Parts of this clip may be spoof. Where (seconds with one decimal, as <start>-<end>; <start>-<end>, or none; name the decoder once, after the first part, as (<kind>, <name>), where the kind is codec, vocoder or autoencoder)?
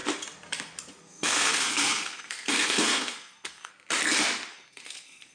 1.0-3.7 (codec, SNAC); 4.5-5.3